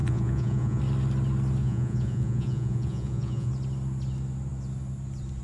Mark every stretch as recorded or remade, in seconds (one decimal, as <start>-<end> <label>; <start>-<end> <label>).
0.0-0.8 remade; 0.8-1.6 recorded; 1.6-3.5 remade; 3.5-5.4 recorded